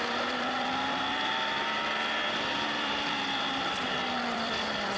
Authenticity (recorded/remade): remade